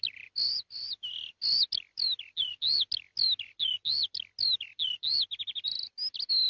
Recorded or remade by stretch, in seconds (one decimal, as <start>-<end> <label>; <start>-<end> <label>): 0.0-6.5 recorded

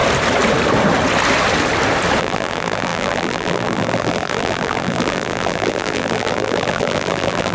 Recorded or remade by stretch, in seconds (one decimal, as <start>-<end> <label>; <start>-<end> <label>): 0.0-2.2 recorded; 2.2-7.5 remade

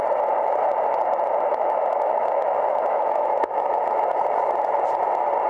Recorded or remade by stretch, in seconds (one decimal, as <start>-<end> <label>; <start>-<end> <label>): 0.0-1.5 recorded; 1.5-4.1 remade; 4.1-5.5 recorded

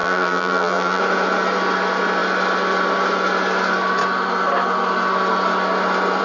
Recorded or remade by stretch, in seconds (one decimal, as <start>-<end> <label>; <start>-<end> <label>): 0.0-1.0 remade; 1.0-6.2 recorded

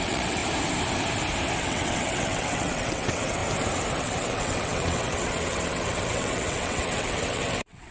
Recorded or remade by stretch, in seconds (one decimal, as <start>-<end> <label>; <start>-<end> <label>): 0.0-0.4 remade; 0.4-1.6 recorded; 1.6-3.4 remade; 3.4-4.0 recorded; 4.0-7.9 remade

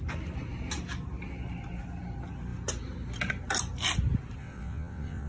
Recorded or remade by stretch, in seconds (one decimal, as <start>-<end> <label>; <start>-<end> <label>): 0.0-4.4 recorded; 4.4-5.3 remade

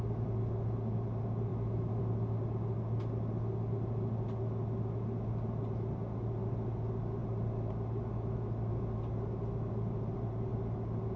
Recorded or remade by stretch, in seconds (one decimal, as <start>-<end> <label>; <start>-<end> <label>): 0.0-1.5 recorded; 1.5-2.0 remade; 2.0-11.2 recorded